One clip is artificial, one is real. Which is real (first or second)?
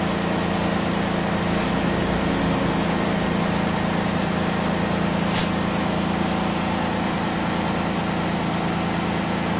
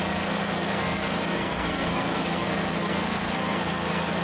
first